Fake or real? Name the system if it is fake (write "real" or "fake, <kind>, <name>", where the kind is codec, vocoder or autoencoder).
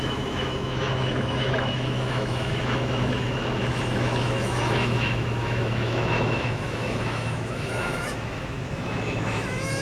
fake, autoencoder, DAC-VAE